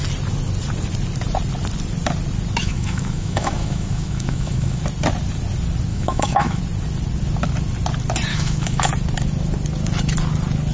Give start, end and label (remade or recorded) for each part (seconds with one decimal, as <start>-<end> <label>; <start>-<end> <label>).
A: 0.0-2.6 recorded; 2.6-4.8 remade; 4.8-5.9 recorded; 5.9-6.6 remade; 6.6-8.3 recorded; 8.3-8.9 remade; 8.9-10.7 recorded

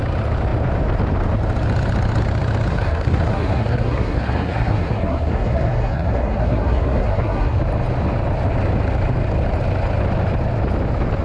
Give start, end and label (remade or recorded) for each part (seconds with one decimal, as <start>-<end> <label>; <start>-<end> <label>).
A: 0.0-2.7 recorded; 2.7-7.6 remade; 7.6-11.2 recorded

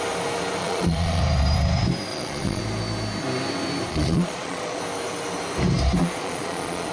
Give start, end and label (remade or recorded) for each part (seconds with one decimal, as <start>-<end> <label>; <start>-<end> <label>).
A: 0.0-0.6 recorded; 0.6-1.2 remade; 1.2-2.1 recorded; 2.1-2.6 remade; 2.6-3.9 recorded; 3.9-4.8 remade; 4.8-6.0 recorded; 6.0-6.9 remade

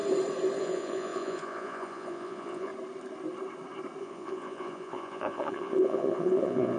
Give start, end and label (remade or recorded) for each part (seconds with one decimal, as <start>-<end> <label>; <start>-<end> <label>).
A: 0.0-0.6 recorded; 0.6-2.7 remade; 2.7-4.0 recorded; 4.0-6.8 remade

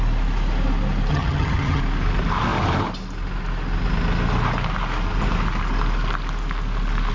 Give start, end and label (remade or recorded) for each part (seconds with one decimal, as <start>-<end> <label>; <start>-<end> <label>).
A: 0.0-1.1 recorded; 1.1-1.8 remade; 1.8-7.1 recorded

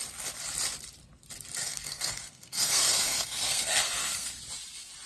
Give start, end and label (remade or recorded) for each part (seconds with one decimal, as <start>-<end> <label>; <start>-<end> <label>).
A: 0.0-1.6 recorded; 1.6-4.4 remade; 4.4-5.1 recorded